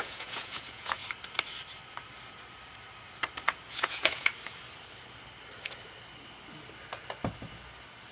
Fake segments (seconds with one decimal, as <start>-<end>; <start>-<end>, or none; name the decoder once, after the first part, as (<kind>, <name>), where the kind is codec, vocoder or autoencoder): 0.0-1.0 (vocoder, Vocos); 3.7-4.3